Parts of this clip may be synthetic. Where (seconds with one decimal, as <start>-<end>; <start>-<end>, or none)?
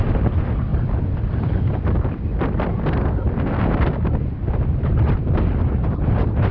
0.0-0.7; 3.6-6.5